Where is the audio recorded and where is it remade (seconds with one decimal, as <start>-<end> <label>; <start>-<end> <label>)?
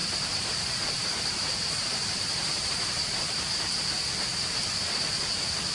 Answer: 0.0-3.4 remade; 3.4-4.3 recorded; 4.3-4.8 remade; 4.8-5.7 recorded